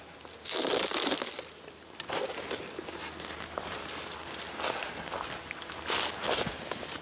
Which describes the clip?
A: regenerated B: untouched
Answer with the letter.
B